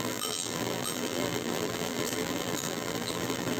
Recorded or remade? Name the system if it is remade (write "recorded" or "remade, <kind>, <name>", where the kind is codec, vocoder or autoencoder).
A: remade, vocoder, BigVGAN v2